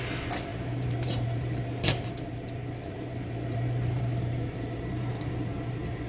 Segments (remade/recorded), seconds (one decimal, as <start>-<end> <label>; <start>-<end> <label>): 0.0-0.5 recorded; 0.5-2.1 remade; 2.1-2.6 recorded; 2.6-5.3 remade; 5.3-6.1 recorded